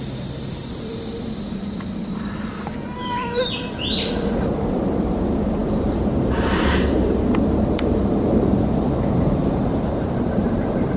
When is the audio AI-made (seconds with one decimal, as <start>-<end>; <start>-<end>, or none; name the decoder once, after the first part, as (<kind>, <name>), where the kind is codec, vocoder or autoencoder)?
0.0-11.0 (vocoder, BigVGAN v2)